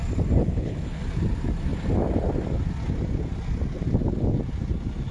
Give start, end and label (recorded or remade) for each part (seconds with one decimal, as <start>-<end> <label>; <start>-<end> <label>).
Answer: 0.0-0.4 recorded; 0.4-1.0 remade; 1.0-5.1 recorded